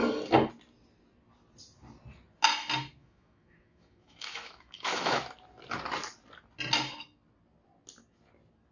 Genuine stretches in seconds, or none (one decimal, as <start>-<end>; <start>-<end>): 0.0-3.0; 5.2-8.7